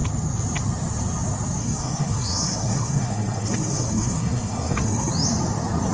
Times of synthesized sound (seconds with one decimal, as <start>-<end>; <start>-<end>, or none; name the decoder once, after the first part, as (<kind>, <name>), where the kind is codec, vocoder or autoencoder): 1.6-5.1 (codec, SNAC)